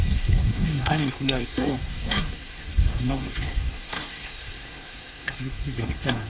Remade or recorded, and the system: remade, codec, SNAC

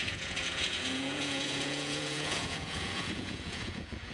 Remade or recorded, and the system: remade, vocoder, Vocos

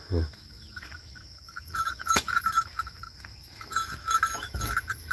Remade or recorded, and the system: remade, autoencoder, DAC-VAE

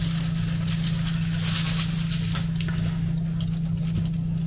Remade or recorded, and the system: recorded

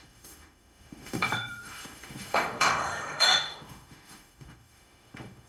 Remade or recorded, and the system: remade, autoencoder, DAC-VAE